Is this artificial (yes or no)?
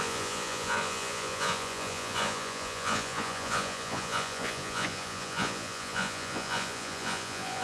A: yes